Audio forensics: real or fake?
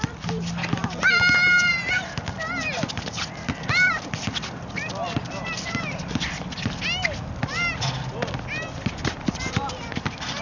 real